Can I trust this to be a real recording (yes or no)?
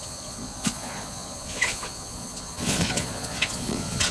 no